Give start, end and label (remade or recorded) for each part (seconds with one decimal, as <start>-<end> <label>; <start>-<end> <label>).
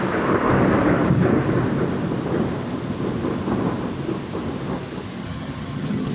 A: 0.0-5.2 recorded; 5.2-6.1 remade